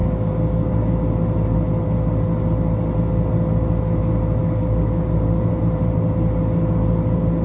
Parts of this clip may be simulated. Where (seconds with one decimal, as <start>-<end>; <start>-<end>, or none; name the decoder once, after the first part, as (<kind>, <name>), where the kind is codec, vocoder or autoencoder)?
0.0-0.9 (codec, DAC); 4.4-5.5